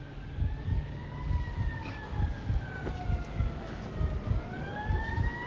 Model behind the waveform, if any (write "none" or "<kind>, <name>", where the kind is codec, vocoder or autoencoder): codec, DAC